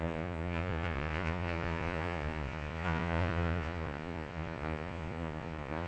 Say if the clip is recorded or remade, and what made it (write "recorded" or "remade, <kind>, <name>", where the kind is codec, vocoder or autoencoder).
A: remade, vocoder, Vocos